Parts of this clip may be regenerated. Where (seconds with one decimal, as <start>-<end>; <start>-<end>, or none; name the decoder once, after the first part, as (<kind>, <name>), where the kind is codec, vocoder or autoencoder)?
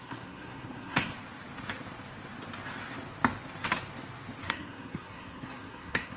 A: 0.0-1.1 (codec, SNAC); 4.4-6.2